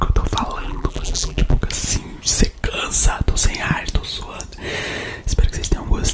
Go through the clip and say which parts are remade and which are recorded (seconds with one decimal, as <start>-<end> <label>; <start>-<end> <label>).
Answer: 0.0-0.6 recorded; 0.6-1.6 remade; 1.6-6.1 recorded